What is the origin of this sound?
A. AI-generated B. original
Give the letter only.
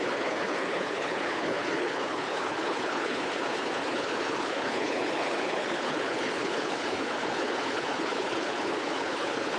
A